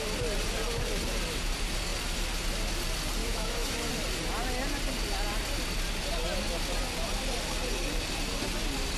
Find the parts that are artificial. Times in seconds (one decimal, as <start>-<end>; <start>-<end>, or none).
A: 3.2-3.9